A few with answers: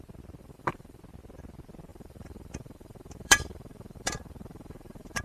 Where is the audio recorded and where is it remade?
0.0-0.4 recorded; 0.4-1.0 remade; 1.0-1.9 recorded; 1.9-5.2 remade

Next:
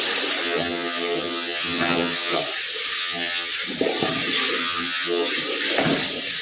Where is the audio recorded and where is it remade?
0.0-0.4 recorded; 0.4-2.4 remade; 2.4-3.0 recorded; 3.0-3.5 remade; 3.5-4.6 recorded; 4.6-5.3 remade; 5.3-6.4 recorded

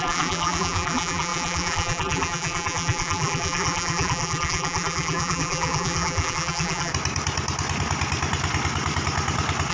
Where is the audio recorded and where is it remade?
0.0-6.9 remade; 6.9-9.7 recorded

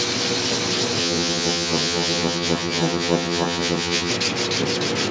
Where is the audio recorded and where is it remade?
0.0-1.0 recorded; 1.0-4.1 remade; 4.1-5.1 recorded

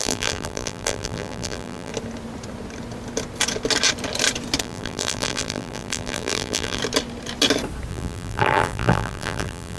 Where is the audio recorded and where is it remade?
0.0-1.9 remade; 1.9-4.6 recorded; 4.6-6.8 remade; 6.8-7.9 recorded; 7.9-9.8 remade

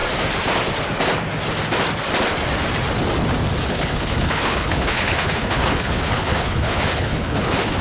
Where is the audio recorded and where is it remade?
0.0-3.7 recorded; 3.7-7.8 remade